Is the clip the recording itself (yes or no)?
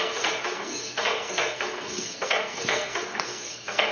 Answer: no